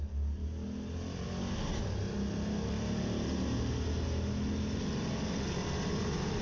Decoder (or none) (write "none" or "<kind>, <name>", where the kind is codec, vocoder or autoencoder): none